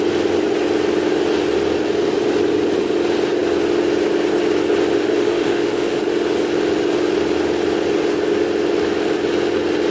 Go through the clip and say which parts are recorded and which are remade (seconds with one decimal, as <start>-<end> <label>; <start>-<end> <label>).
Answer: 0.0-4.9 recorded; 4.9-6.0 remade; 6.0-9.9 recorded